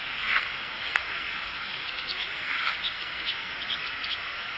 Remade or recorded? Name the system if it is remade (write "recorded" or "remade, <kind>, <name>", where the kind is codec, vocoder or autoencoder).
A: remade, codec, SNAC